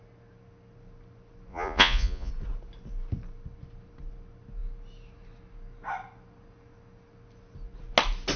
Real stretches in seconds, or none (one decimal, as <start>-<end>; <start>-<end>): 0.0-1.5; 2.3-8.4